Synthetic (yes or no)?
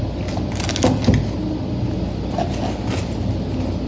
no